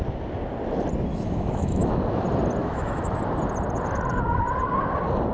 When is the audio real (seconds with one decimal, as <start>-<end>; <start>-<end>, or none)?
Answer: 0.0-1.1; 1.9-2.6; 3.2-5.3